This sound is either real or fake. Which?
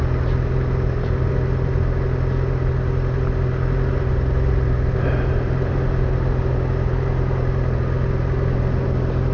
real